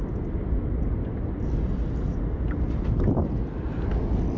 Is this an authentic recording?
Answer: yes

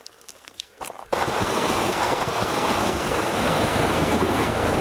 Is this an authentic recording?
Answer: no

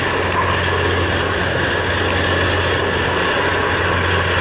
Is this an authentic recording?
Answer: yes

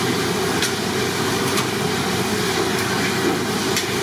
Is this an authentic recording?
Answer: yes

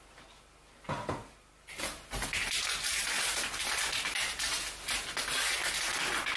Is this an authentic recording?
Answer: yes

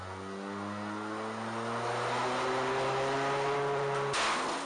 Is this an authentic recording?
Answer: yes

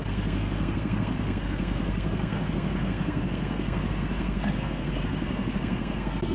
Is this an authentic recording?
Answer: no